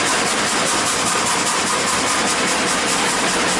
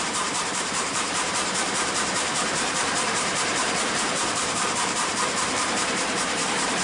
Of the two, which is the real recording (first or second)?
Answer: first